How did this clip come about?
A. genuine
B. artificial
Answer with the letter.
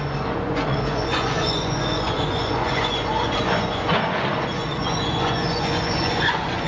B